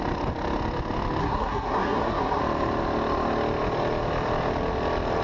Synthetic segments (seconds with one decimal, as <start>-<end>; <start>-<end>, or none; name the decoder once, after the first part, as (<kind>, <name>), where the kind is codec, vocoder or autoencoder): 1.2-2.4 (codec, SNAC)